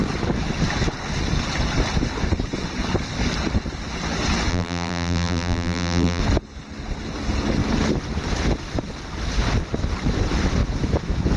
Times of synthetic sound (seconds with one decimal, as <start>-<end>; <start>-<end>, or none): 4.5-6.2